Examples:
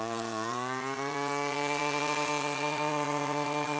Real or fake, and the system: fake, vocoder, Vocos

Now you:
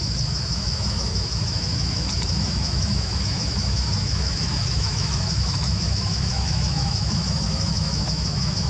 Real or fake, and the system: fake, autoencoder, DAC-VAE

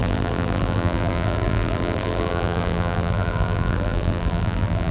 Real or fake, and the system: fake, vocoder, BigVGAN v2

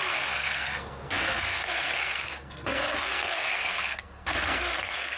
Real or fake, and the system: fake, codec, SNAC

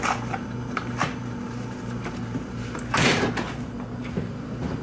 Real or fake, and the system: fake, vocoder, BigVGAN v2